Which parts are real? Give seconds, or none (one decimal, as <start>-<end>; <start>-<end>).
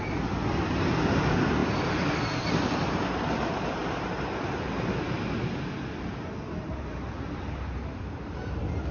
0.0-8.9